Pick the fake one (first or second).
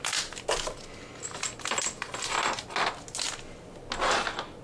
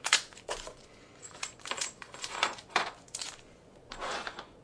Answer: second